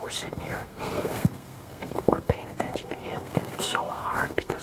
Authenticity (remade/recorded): remade